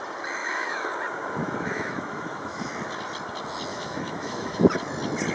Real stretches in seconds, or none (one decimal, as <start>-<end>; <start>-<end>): 0.0-0.4; 0.9-1.4; 2.7-3.7; 4.7-5.3